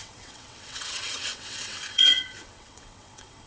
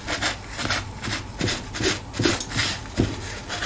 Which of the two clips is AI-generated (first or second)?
first